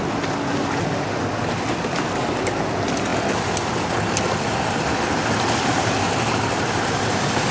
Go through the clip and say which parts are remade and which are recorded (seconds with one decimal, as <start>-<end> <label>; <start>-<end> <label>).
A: 0.0-7.5 recorded